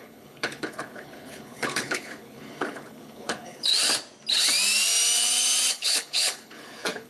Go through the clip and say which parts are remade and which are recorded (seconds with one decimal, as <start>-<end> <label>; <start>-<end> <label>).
0.0-3.7 remade; 3.7-5.7 recorded; 5.7-7.1 remade